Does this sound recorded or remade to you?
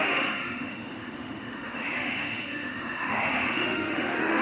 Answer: remade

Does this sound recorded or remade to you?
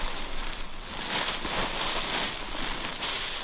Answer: recorded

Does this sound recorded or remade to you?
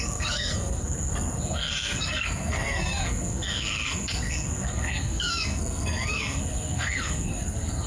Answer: remade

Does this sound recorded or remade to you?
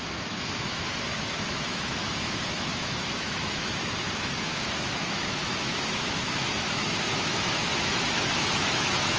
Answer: remade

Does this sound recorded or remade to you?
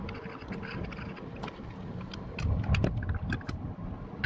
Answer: recorded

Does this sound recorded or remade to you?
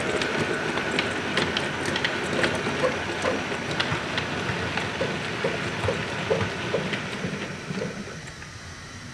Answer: recorded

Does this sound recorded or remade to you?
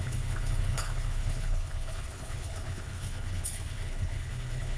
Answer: remade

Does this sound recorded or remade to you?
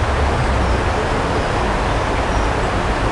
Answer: recorded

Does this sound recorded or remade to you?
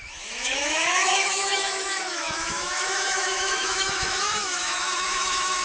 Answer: remade